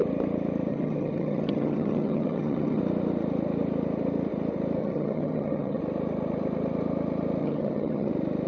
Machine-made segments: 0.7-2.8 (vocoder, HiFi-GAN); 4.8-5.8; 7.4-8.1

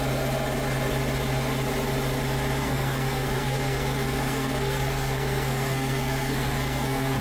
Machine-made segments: 2.6-7.2 (codec, SNAC)

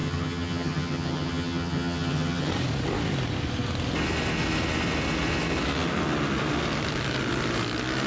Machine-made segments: 0.0-2.5 (vocoder, HiFi-GAN)

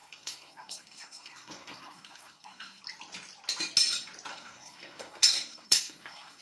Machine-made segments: 0.0-2.8 (codec, SNAC); 4.3-6.4